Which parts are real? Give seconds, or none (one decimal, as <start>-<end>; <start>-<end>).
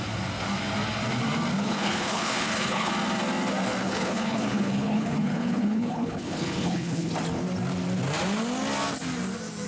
0.0-1.5; 2.9-3.8; 7.1-9.7